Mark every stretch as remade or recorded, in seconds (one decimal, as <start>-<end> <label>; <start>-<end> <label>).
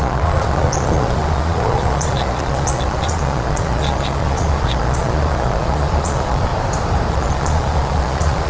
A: 0.0-6.5 remade; 6.5-7.1 recorded; 7.1-8.5 remade